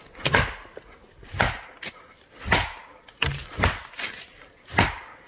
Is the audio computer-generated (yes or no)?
no